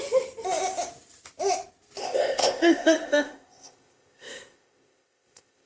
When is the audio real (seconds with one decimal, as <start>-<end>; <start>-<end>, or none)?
0.0-2.0